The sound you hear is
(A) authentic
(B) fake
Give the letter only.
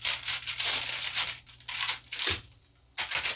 A